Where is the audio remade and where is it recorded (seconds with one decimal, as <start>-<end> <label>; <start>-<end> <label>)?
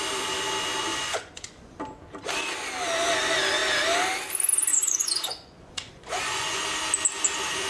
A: 0.0-0.9 recorded; 0.9-1.8 remade; 1.8-4.7 recorded; 4.7-6.6 remade; 6.6-7.7 recorded